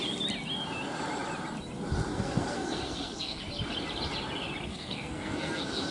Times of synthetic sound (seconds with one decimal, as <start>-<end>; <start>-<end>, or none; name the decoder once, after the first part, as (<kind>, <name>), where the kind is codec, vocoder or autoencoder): 2.1-3.4 (codec, SNAC); 4.7-5.9